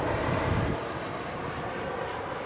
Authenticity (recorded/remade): remade